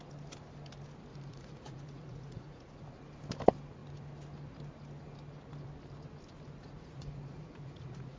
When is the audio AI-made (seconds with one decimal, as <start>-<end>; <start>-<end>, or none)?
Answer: 1.1-2.7; 6.6-8.2